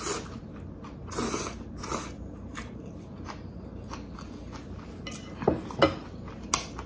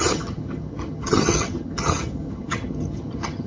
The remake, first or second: second